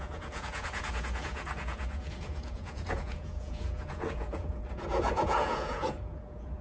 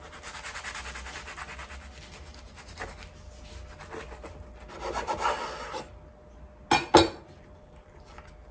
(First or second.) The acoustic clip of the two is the second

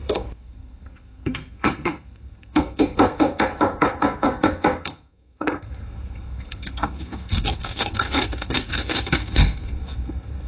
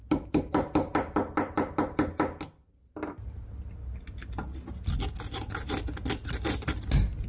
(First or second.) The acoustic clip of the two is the second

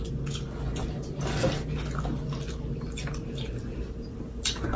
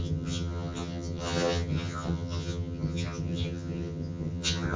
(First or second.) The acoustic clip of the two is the first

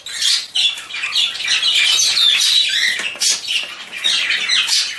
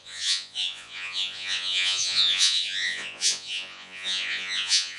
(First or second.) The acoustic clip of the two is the first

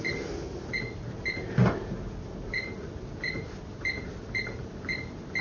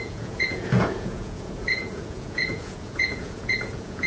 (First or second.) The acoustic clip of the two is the first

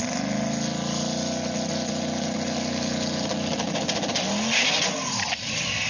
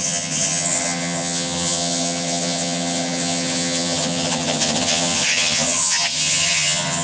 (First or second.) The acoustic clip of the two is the first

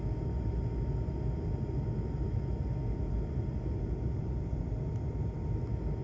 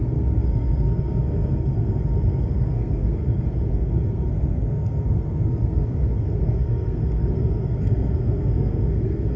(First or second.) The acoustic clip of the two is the first